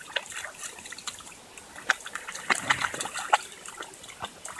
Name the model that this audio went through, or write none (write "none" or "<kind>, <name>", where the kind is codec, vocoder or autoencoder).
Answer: none